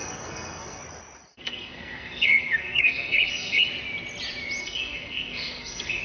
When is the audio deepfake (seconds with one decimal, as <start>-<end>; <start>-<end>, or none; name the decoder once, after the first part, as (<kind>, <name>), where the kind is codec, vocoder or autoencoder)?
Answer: 0.0-0.8 (codec, SNAC); 1.3-3.7; 4.6-6.0

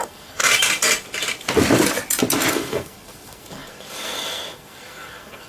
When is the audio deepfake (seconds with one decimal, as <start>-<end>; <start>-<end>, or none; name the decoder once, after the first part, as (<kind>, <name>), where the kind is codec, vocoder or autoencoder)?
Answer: 0.0-0.4 (codec, SNAC); 2.5-5.5